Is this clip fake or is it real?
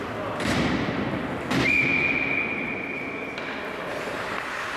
real